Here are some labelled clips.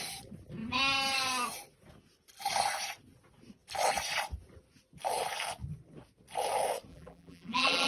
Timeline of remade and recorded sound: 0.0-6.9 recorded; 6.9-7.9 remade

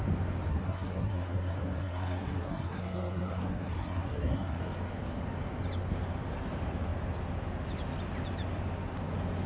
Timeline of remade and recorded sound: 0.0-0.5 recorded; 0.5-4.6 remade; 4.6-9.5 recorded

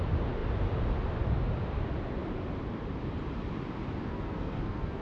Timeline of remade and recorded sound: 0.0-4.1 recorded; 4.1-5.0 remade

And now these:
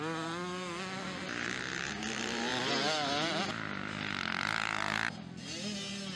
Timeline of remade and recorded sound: 0.0-6.2 recorded

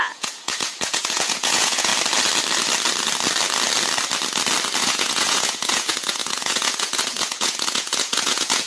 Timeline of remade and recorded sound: 0.0-1.9 remade; 1.9-4.8 recorded; 4.8-8.7 remade